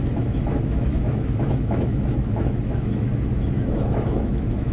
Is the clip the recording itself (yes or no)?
no